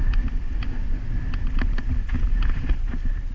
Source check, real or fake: real